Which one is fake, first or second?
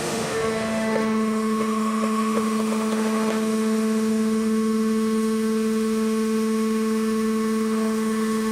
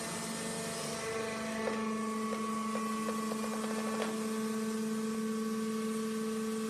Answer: first